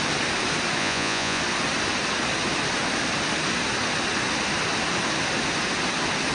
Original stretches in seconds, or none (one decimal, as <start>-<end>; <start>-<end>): 0.0-0.8; 1.4-6.3